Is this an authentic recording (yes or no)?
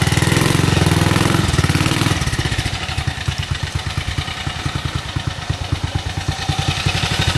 yes